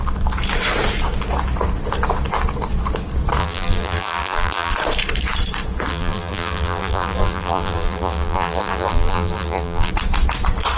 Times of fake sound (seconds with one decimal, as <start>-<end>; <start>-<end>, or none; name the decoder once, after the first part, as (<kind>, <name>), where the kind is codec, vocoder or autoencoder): 3.4-4.7 (vocoder, BigVGAN v2); 5.9-9.9

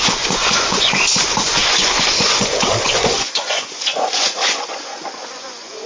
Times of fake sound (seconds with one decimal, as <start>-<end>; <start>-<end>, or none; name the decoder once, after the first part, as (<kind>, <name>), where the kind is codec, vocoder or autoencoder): 0.0-5.9 (vocoder, Vocos)

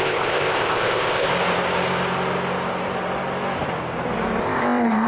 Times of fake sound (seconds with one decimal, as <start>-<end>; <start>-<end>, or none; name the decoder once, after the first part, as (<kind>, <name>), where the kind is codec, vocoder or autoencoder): 0.0-1.3 (codec, ZipCodec); 4.4-5.1

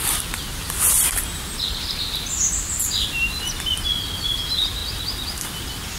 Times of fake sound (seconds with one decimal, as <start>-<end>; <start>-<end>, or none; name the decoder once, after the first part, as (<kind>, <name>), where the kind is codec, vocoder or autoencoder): 0.0-0.7 (vocoder, BigVGAN v2)

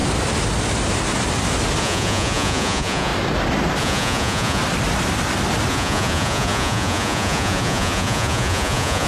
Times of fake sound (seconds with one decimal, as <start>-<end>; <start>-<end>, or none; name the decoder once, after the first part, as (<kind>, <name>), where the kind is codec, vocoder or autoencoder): 1.8-3.1 (vocoder, Vocos); 3.8-4.6; 5.7-9.1

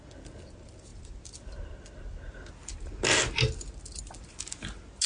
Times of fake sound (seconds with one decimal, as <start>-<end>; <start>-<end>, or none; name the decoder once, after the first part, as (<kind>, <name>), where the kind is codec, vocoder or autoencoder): none

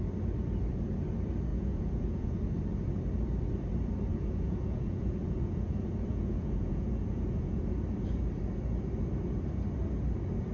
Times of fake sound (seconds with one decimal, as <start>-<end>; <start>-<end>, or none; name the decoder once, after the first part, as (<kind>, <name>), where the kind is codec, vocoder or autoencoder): 1.5-2.4 (vocoder, Vocos); 4.1-7.6

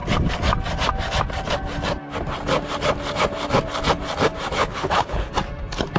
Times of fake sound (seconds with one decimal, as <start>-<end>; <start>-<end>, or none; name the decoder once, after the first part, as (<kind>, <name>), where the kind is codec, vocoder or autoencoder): 4.6-5.3 (codec, HILCodec)